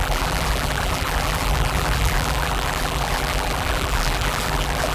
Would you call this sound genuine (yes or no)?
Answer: no